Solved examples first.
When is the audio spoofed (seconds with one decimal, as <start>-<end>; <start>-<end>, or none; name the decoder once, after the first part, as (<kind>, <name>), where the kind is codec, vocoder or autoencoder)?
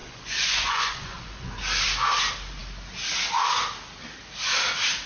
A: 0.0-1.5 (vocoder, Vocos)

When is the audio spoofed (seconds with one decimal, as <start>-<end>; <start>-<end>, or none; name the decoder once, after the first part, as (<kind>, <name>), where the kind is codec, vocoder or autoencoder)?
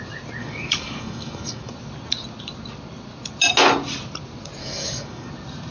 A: 0.4-1.7 (codec, DAC); 4.6-5.3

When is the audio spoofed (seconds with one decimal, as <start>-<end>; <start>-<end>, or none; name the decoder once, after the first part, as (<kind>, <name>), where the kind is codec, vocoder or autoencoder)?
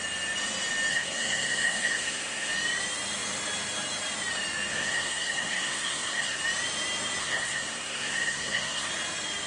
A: 0.9-2.5 (codec, SNAC); 4.7-6.4; 7.2-8.9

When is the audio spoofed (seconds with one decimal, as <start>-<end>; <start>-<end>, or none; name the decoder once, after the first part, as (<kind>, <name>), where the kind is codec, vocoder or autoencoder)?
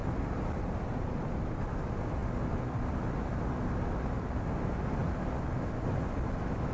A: none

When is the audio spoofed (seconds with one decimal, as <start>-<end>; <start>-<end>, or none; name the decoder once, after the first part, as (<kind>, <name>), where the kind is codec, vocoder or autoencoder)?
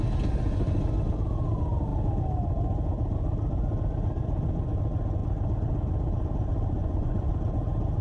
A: 6.8-7.3 (vocoder, Vocos)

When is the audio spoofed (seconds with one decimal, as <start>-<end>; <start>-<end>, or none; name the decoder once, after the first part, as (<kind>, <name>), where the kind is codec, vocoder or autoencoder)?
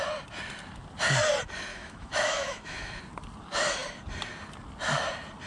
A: 1.7-3.0 (autoencoder, DAC-VAE)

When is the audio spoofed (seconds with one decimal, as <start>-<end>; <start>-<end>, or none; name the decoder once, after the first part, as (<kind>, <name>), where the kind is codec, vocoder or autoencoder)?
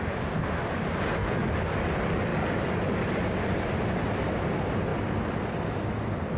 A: 1.2-1.9 (codec, DAC); 2.3-3.1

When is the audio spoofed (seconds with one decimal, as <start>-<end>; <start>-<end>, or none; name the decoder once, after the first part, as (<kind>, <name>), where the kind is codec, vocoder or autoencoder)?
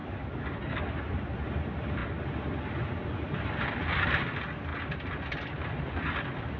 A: none